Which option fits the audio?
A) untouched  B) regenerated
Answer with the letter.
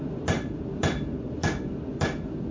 A